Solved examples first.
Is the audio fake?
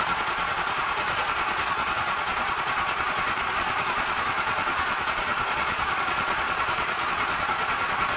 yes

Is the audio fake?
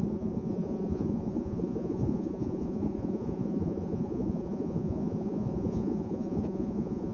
yes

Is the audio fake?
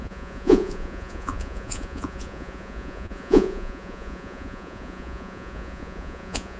yes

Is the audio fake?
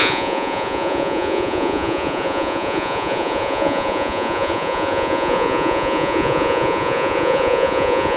yes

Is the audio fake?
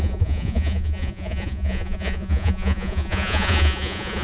yes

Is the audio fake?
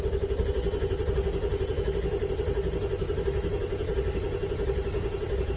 no